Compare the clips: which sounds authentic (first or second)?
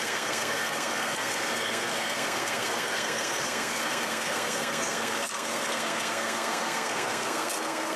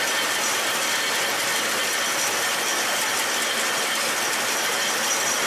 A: second